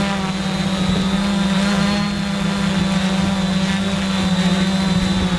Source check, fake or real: real